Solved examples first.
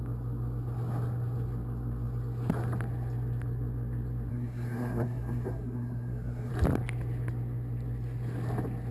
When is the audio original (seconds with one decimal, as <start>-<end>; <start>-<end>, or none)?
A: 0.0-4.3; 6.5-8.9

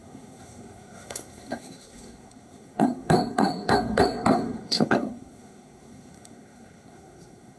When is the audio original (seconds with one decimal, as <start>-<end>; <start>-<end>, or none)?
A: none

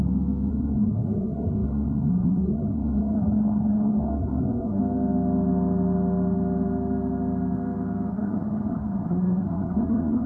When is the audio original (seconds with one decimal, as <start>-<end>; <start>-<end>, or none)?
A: 0.0-0.5; 4.8-8.1